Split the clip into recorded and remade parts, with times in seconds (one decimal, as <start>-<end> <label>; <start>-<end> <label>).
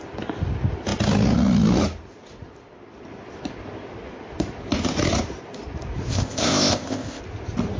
0.0-6.1 recorded; 6.1-7.2 remade; 7.2-7.8 recorded